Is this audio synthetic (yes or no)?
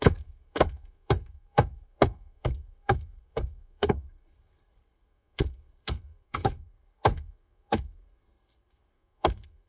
yes